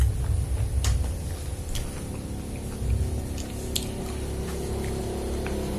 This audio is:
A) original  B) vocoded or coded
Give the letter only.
A